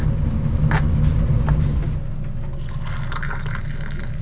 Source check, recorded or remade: recorded